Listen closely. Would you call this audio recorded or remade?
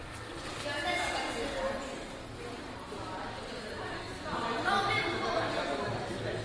recorded